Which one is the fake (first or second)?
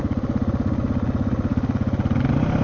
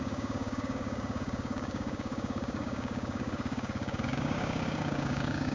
second